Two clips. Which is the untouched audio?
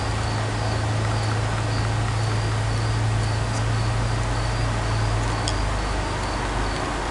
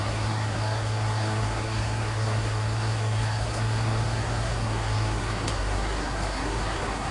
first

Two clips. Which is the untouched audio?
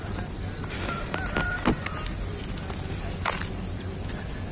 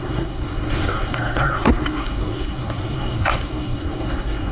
first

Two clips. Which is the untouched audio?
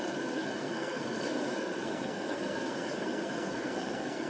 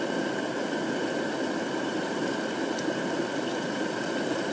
second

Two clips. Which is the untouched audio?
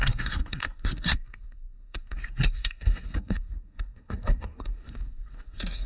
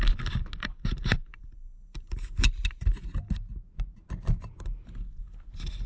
second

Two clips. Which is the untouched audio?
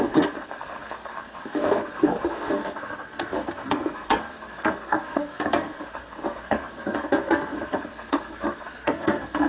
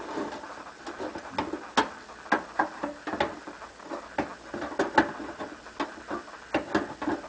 second